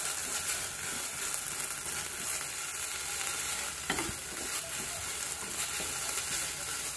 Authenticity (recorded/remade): recorded